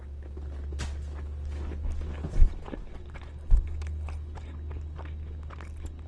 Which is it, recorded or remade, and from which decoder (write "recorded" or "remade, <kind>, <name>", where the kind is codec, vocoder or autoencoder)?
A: recorded